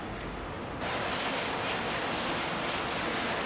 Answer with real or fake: real